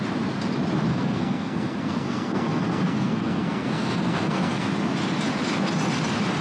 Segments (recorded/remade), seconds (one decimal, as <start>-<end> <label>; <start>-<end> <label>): 0.0-0.9 recorded; 0.9-4.7 remade; 4.7-6.4 recorded